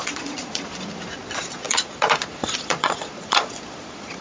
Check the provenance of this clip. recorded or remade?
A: remade